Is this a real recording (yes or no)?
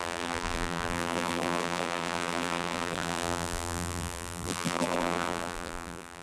no